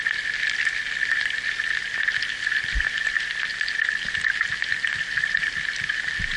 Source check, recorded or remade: recorded